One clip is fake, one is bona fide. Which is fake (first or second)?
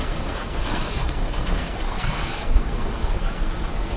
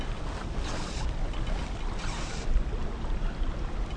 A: first